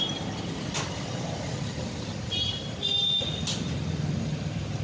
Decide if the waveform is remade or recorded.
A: recorded